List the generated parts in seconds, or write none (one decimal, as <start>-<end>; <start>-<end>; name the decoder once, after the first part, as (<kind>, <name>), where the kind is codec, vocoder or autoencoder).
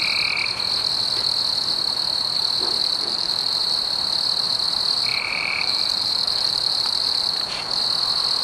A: 2.8-3.6 (vocoder, BigVGAN v2); 5.1-7.3